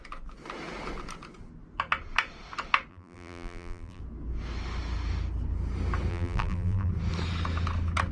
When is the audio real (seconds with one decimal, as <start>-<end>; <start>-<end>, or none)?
0.0-2.9; 4.0-6.1; 6.9-8.1